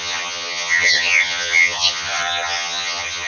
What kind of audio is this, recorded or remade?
remade